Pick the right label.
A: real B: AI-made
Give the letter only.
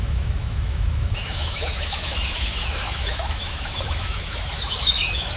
B